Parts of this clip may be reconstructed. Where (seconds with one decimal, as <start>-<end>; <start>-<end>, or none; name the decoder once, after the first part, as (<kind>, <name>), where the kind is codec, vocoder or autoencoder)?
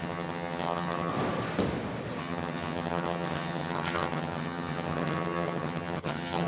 0.0-1.1 (vocoder, HiFi-GAN); 2.2-6.5